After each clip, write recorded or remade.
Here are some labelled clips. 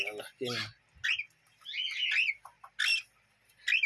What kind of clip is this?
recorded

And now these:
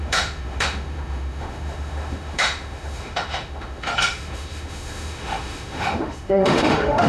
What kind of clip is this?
remade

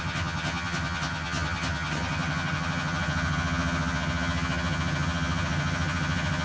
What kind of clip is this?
remade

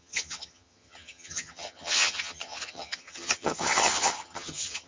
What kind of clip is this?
remade